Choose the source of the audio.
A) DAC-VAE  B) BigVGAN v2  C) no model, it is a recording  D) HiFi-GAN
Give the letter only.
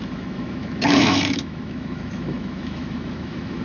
A